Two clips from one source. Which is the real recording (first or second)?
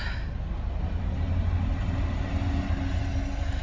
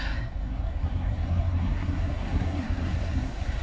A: first